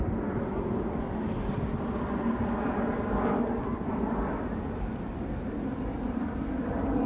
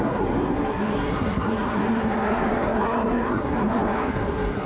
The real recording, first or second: first